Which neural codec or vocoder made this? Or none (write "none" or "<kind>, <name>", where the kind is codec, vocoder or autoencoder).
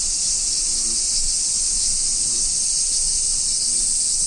none